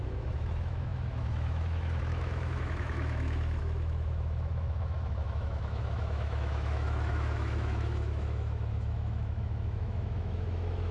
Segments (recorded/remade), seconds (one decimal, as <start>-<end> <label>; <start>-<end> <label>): 0.0-10.9 remade